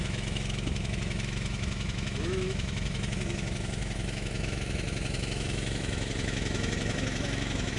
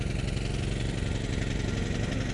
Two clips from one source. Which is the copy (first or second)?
first